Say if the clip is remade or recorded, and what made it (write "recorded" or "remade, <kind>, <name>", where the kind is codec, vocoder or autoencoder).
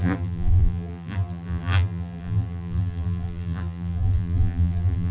remade, vocoder, BigVGAN v2